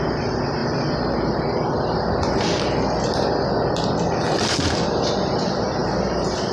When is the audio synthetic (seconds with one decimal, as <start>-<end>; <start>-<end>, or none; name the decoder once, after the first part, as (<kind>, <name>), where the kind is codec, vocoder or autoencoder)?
0.0-0.6 (vocoder, BigVGAN v2); 4.5-6.5